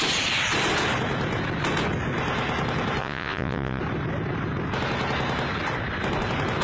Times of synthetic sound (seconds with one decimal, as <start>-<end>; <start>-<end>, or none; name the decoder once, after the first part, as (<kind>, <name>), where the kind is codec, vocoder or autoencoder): 3.0-3.8 (vocoder, Vocos)